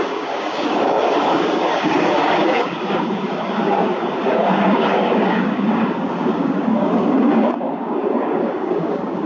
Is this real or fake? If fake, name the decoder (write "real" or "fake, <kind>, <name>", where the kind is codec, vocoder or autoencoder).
fake, codec, DAC